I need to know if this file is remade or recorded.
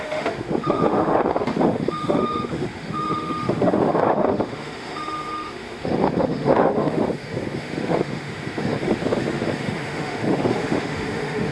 remade